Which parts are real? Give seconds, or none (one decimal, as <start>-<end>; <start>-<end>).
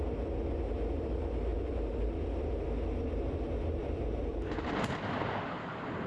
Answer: 0.0-1.5; 2.1-3.8; 4.5-6.1